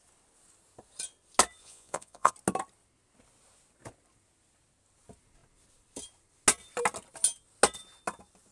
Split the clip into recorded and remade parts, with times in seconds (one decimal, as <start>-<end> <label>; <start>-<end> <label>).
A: 0.0-1.6 recorded; 1.6-2.3 remade; 2.3-8.5 recorded